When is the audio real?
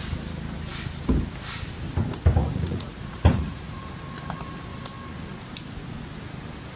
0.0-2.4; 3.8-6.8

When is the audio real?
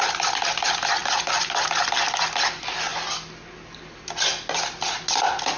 0.0-5.6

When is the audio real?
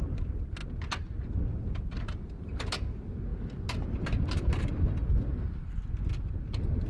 0.0-6.9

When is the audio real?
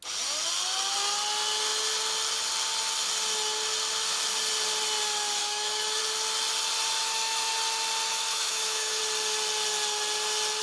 0.0-5.4; 6.0-7.0; 7.5-8.1; 9.0-10.6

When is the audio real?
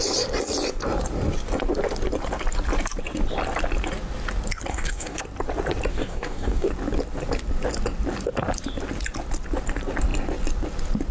0.0-4.7; 5.2-5.9; 6.7-11.1